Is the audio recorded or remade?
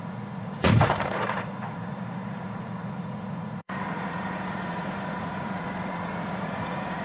remade